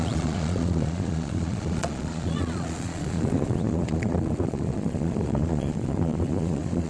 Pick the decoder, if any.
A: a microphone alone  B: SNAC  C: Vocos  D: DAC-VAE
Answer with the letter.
C